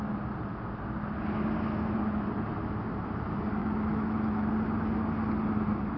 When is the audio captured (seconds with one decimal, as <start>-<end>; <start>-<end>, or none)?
0.0-3.6; 4.5-6.0

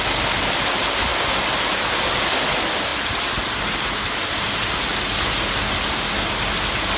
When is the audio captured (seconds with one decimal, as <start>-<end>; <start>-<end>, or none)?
0.0-7.0